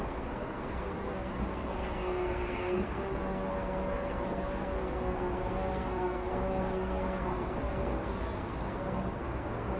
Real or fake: fake